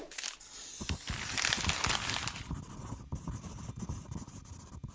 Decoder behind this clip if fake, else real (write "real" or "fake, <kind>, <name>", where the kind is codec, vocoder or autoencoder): real